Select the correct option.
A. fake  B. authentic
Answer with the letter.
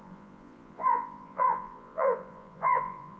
A